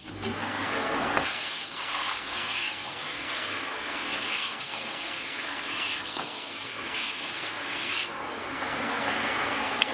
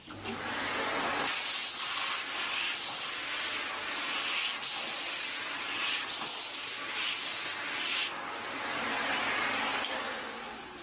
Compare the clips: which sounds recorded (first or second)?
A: second